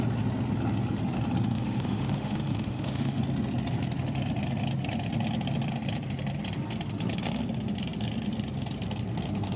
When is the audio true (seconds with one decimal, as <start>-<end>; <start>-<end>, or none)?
0.0-1.4; 3.2-9.6